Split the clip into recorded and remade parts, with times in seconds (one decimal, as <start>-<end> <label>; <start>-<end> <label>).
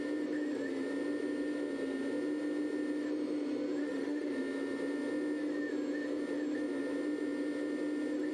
0.0-3.8 recorded; 3.8-4.3 remade; 4.3-8.3 recorded